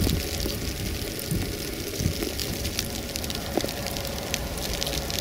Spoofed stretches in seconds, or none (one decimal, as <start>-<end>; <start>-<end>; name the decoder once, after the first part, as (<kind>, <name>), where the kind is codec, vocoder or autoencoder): 2.4-4.7 (vocoder, BigVGAN v2)